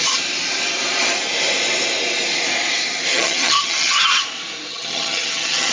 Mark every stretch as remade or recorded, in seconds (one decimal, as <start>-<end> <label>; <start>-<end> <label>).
0.0-3.1 recorded; 3.1-4.2 remade; 4.2-4.7 recorded; 4.7-5.7 remade